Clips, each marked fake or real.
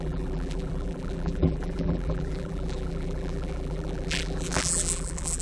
fake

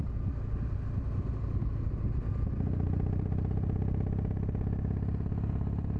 real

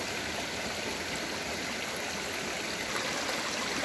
real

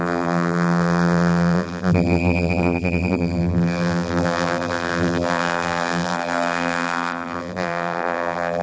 fake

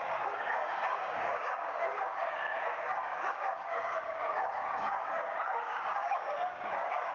fake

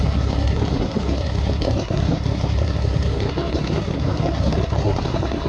fake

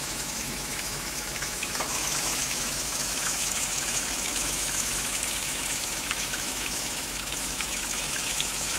fake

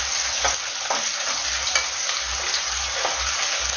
real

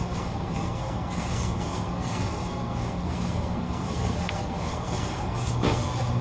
fake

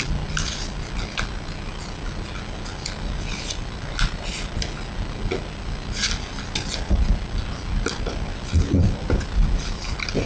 real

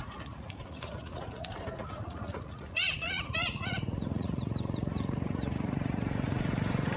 fake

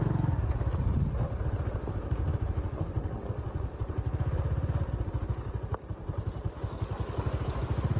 real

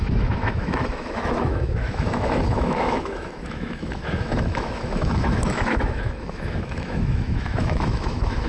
fake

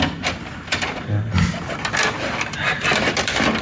real